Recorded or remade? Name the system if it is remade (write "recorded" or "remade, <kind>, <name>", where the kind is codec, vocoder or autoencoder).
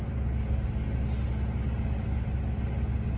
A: recorded